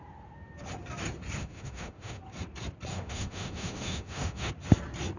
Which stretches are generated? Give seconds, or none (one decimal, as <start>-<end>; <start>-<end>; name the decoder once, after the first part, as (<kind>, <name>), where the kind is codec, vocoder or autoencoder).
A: 1.4-2.2 (autoencoder, DAC-VAE); 2.9-4.5